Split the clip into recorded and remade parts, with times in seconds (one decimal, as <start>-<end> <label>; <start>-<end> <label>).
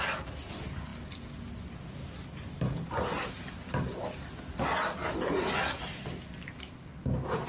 0.0-7.5 recorded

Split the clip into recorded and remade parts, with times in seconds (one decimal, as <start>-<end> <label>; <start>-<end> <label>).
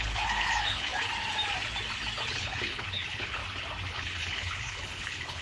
0.0-0.9 remade; 0.9-2.3 recorded; 2.3-3.4 remade; 3.4-3.9 recorded; 3.9-5.4 remade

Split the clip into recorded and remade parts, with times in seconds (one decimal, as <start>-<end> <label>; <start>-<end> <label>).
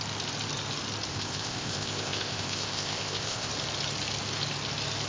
0.0-1.1 recorded; 1.1-3.5 remade; 3.5-5.1 recorded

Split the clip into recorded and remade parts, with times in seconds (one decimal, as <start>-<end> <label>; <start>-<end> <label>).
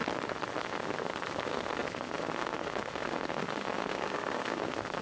0.0-0.6 recorded; 0.6-5.0 remade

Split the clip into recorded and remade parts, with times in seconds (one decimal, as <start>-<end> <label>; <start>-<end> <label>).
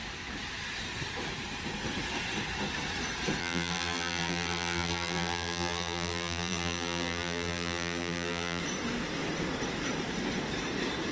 0.0-3.4 recorded; 3.4-8.6 remade; 8.6-11.1 recorded